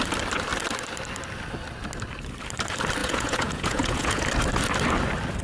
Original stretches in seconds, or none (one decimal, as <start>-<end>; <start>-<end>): 0.0-3.0; 4.2-5.4